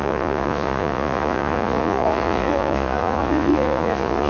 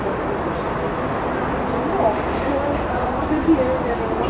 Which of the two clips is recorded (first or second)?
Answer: second